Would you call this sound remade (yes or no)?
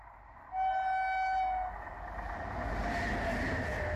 no